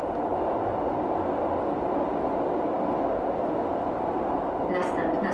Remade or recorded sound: recorded